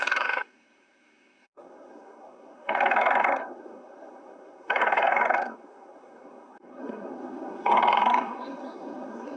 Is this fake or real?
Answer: fake